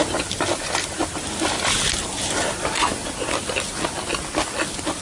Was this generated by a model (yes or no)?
no